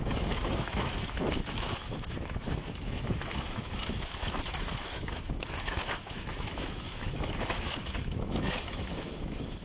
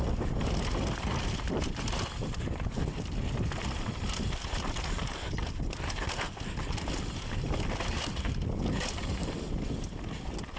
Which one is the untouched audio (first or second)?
second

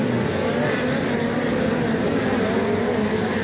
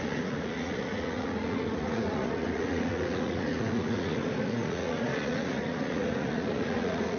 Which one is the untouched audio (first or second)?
first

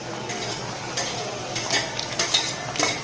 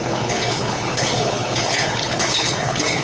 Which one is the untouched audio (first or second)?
first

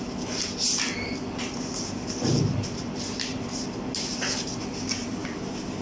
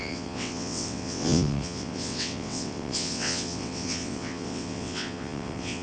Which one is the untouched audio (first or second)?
first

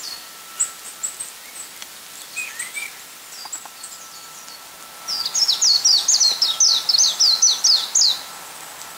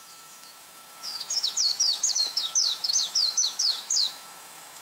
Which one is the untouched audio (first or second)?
first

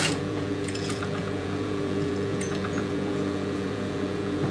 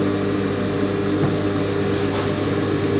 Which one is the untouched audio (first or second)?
second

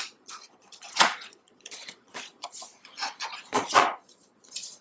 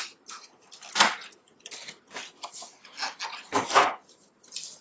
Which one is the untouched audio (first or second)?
second